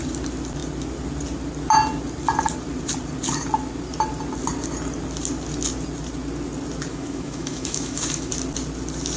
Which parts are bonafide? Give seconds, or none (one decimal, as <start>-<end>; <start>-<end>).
0.0-6.9; 8.3-9.2